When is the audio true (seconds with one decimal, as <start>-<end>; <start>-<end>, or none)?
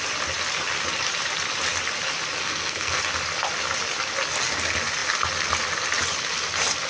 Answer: 0.0-2.4; 3.0-6.9